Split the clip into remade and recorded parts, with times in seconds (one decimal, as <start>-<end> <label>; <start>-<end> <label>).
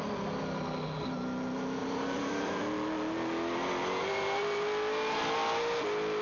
0.0-1.8 recorded; 1.8-2.6 remade; 2.6-6.2 recorded